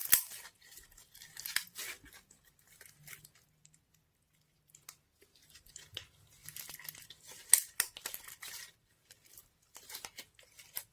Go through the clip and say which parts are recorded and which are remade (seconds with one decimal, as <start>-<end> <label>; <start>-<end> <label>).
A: 0.0-10.9 recorded